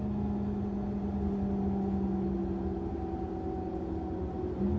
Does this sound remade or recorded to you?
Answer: recorded